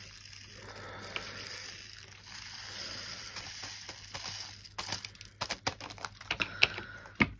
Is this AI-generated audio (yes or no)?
no